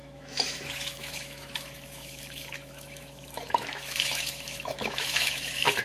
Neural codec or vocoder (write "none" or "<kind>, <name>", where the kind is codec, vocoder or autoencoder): autoencoder, DAC-VAE